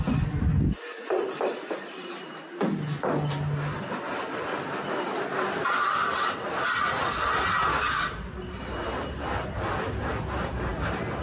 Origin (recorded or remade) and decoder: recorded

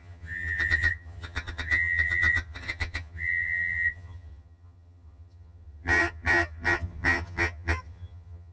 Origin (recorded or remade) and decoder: remade, vocoder, HiFi-GAN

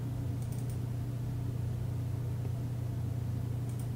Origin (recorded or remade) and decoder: recorded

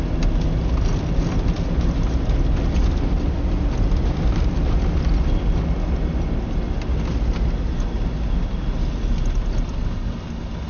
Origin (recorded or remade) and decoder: recorded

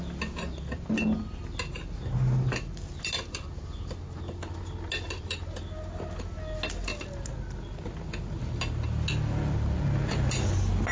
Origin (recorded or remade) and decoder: recorded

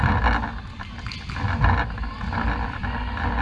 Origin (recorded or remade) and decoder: recorded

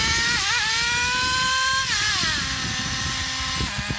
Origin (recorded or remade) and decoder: recorded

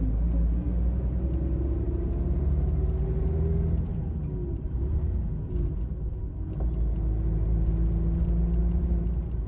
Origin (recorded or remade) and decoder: recorded